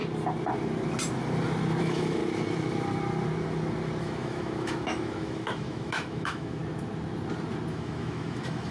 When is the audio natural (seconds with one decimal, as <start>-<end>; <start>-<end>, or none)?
0.0-1.8; 2.2-4.0; 6.6-7.7